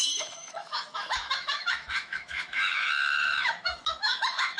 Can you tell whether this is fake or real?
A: fake